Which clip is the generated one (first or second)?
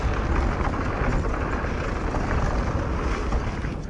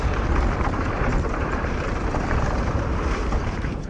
second